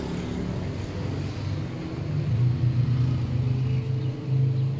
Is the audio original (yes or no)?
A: yes